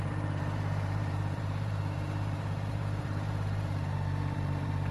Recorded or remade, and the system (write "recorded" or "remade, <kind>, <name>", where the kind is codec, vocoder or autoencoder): remade, vocoder, BigVGAN v2